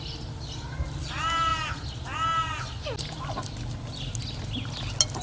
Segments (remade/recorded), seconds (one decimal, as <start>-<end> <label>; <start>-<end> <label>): 0.0-5.2 recorded